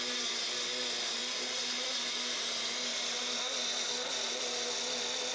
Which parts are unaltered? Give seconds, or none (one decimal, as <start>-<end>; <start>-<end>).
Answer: 0.0-5.3